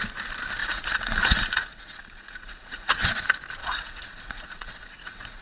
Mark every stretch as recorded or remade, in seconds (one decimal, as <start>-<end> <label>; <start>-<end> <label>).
0.0-0.6 recorded; 0.6-3.1 remade; 3.1-3.6 recorded; 3.6-5.4 remade

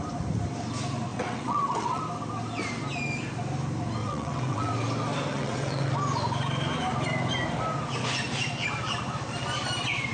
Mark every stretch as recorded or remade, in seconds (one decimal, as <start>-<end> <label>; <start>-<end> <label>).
0.0-1.1 recorded; 1.1-2.0 remade; 2.0-4.0 recorded; 4.0-4.7 remade; 4.7-5.3 recorded; 5.3-5.9 remade; 5.9-10.1 recorded

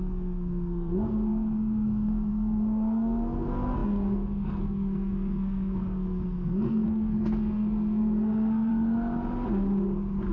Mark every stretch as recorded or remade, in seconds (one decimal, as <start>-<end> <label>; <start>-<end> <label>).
0.0-8.7 remade; 8.7-10.3 recorded

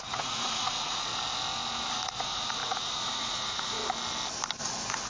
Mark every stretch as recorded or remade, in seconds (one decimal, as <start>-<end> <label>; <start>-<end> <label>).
0.0-1.1 remade; 1.1-1.9 recorded; 1.9-3.8 remade; 3.8-4.6 recorded; 4.6-5.1 remade